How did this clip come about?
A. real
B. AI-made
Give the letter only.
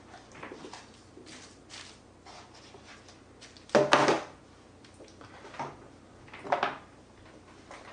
A